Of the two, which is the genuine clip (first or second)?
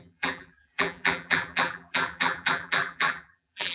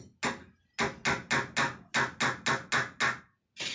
second